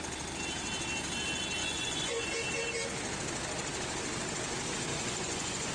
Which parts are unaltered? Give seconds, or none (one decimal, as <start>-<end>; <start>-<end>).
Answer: 0.0-1.6; 2.3-4.9